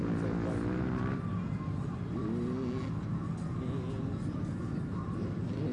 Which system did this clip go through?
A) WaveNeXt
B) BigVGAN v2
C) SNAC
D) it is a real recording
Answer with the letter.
D